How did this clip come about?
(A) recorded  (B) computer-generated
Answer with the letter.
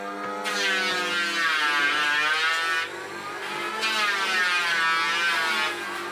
A